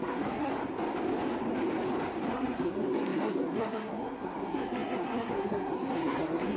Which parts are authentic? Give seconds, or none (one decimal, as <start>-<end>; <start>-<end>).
0.5-2.3